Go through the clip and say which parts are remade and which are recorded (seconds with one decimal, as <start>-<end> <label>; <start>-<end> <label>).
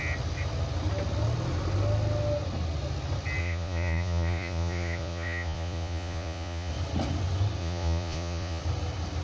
0.0-3.4 recorded; 3.4-6.7 remade; 6.7-7.6 recorded; 7.6-8.6 remade; 8.6-9.2 recorded